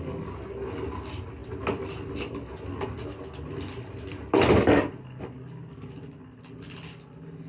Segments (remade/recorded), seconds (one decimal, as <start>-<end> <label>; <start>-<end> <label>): 0.0-7.5 recorded